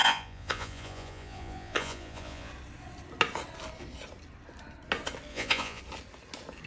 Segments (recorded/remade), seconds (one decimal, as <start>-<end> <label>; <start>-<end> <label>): 0.0-2.5 remade; 2.5-5.3 recorded; 5.3-5.8 remade; 5.8-6.7 recorded